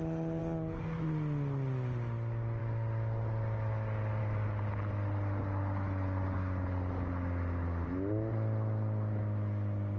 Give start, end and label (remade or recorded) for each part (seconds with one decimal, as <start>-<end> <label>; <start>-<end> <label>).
0.0-0.4 recorded; 0.4-1.0 remade; 1.0-10.0 recorded